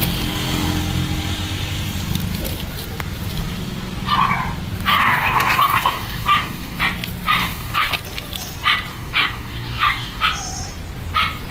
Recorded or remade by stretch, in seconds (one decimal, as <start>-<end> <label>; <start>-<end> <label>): 0.0-4.9 recorded; 4.9-6.8 remade; 6.8-7.4 recorded; 7.4-7.9 remade; 7.9-8.9 recorded; 8.9-10.2 remade; 10.2-11.5 recorded